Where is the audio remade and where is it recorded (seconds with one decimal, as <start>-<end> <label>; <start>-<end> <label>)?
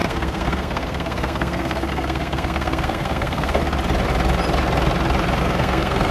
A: 0.0-3.6 remade; 3.6-5.4 recorded; 5.4-6.1 remade